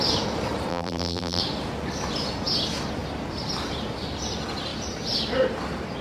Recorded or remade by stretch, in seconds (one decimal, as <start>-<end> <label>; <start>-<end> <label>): 0.0-0.7 recorded; 0.7-1.4 remade; 1.4-6.0 recorded